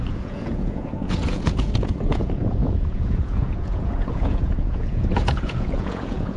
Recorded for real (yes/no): no